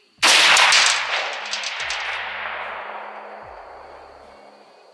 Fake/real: real